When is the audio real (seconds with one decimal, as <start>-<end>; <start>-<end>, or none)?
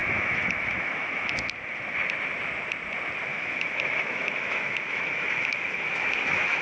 1.5-3.3